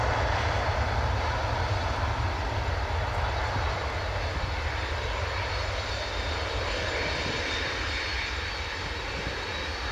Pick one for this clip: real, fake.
real